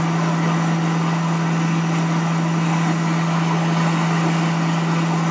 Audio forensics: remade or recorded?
recorded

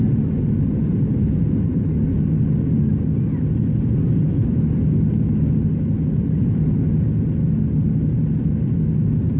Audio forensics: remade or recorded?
recorded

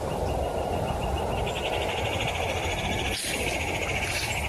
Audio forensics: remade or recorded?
recorded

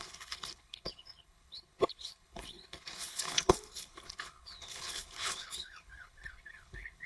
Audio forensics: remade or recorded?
remade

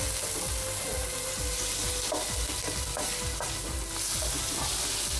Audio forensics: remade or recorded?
recorded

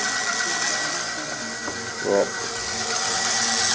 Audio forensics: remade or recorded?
recorded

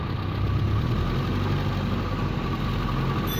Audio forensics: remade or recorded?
recorded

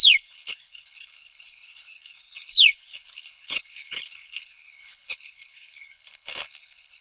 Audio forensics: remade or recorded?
remade